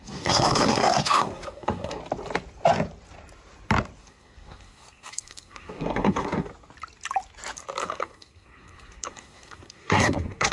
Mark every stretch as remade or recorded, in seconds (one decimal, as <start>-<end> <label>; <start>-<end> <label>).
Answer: 0.0-2.0 remade; 2.0-4.0 recorded; 4.0-6.5 remade; 6.5-7.8 recorded; 7.8-10.5 remade